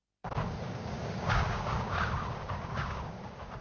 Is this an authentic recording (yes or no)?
no